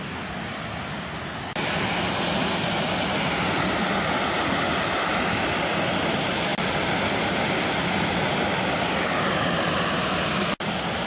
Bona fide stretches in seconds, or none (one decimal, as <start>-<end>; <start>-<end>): 0.0-11.1

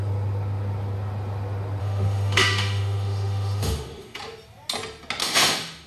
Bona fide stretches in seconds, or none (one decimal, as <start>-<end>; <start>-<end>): 0.0-1.8; 4.2-5.2

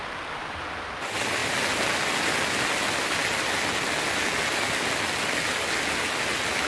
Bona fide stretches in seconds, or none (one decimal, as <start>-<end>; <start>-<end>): 0.0-6.7

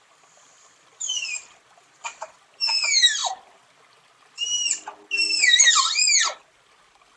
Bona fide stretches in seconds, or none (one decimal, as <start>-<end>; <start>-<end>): 0.0-7.2

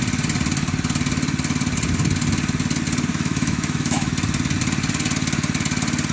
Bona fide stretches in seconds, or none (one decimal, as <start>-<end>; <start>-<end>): 0.0-3.1; 4.1-6.1

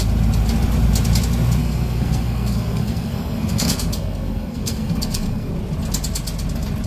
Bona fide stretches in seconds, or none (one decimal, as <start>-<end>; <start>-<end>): 0.0-1.6; 5.5-6.9